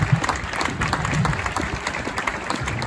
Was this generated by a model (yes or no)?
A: no